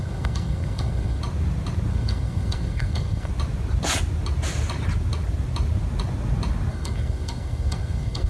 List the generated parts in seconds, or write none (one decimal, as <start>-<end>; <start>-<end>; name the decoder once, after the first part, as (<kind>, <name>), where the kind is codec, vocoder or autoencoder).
0.0-1.2 (codec, SNAC); 1.9-3.3; 6.7-8.3

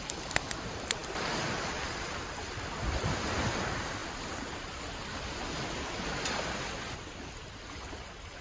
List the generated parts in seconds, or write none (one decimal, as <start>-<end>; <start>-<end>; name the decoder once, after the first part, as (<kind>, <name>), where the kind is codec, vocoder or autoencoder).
none

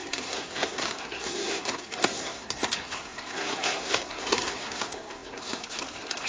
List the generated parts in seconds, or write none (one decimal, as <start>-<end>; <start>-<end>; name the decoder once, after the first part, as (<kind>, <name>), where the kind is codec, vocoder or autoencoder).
0.0-6.3 (codec, SNAC)

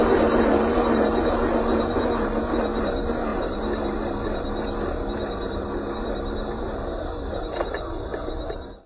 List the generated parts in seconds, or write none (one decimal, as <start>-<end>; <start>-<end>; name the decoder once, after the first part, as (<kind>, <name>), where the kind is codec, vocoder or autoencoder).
none

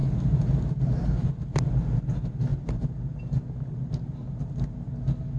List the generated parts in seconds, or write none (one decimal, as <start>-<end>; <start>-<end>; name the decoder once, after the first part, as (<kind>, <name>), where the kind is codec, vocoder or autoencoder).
none

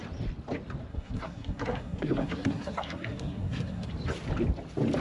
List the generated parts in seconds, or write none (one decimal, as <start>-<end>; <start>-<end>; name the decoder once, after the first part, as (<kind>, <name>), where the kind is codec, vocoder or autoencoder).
0.9-3.9 (codec, SNAC)

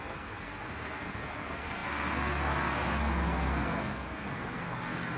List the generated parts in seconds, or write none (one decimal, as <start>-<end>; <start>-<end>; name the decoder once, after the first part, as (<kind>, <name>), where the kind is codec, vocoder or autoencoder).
0.0-5.2 (codec, SNAC)